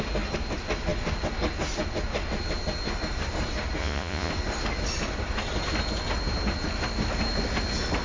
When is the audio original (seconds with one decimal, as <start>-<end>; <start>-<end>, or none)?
0.0-3.8; 4.3-8.0